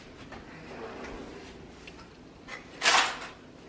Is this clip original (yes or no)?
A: yes